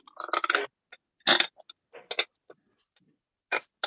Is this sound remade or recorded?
recorded